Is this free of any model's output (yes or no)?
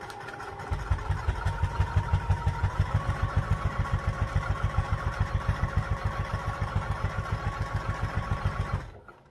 no